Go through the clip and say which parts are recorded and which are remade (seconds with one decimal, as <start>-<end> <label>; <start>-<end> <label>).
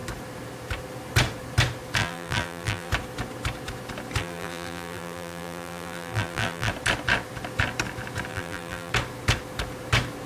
0.0-2.0 recorded; 2.0-2.9 remade; 2.9-4.2 recorded; 4.2-6.7 remade; 6.7-8.3 recorded; 8.3-8.9 remade; 8.9-10.3 recorded